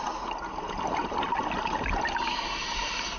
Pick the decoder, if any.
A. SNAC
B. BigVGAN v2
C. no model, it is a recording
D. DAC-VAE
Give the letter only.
C